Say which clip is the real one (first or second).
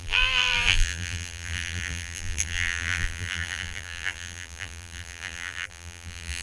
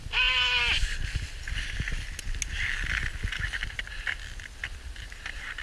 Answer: second